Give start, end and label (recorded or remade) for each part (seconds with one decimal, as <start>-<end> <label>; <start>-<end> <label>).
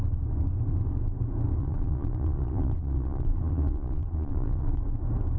0.0-1.6 recorded; 1.6-4.8 remade; 4.8-5.4 recorded